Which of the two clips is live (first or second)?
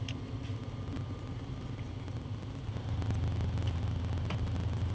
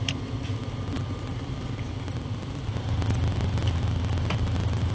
first